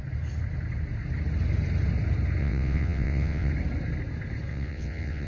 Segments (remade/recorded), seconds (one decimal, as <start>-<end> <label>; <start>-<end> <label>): 0.0-2.4 recorded; 2.4-3.5 remade; 3.5-4.5 recorded; 4.5-5.3 remade